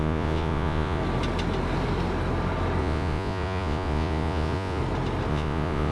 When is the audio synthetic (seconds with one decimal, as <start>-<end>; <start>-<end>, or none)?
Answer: 0.0-1.0; 2.8-4.8; 5.3-5.9